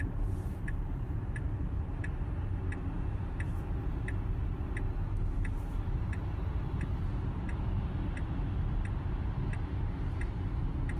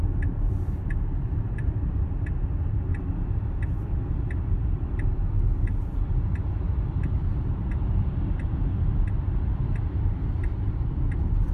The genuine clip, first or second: first